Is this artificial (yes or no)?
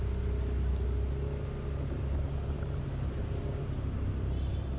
no